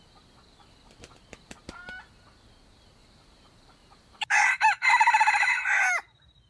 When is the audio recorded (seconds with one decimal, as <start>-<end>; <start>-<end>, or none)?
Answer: 0.0-3.0; 4.9-6.5